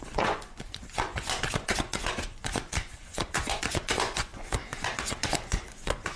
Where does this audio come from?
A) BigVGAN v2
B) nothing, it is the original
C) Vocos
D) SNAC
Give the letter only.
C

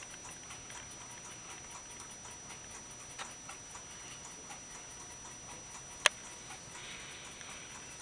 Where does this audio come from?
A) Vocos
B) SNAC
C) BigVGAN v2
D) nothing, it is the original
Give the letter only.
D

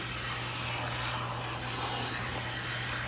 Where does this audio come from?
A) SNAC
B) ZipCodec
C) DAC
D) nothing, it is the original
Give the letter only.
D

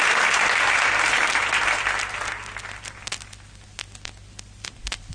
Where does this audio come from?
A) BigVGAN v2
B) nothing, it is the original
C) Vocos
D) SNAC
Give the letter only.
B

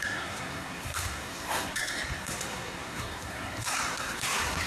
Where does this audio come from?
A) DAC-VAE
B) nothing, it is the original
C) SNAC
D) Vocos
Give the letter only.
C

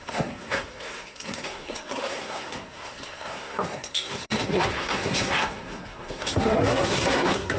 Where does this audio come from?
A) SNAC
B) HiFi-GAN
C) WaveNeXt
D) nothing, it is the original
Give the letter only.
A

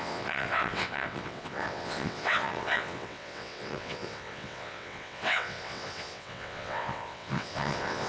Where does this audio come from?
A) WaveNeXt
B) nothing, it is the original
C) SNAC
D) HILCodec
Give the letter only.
A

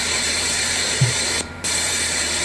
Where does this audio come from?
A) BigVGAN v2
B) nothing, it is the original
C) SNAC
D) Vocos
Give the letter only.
A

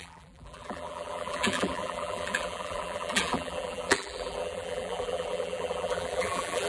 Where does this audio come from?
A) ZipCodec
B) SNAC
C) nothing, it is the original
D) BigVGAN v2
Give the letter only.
D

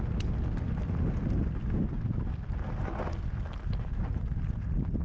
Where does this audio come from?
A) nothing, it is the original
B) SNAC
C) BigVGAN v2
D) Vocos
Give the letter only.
A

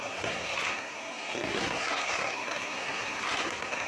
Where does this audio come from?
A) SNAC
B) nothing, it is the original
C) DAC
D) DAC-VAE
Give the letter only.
A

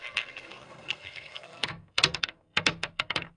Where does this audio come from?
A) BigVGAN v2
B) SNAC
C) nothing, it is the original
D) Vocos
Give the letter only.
B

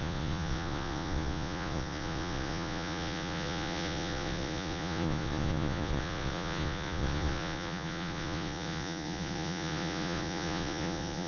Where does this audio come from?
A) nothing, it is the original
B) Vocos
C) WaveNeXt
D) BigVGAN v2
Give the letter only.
B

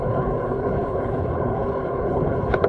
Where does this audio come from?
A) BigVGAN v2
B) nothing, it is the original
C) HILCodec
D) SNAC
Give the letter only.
C